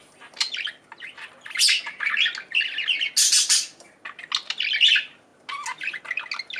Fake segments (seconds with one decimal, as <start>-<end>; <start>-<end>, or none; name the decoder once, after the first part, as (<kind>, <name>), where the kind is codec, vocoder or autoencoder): none